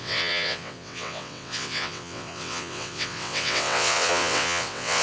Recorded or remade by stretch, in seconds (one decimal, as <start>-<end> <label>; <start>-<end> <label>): 0.0-5.0 remade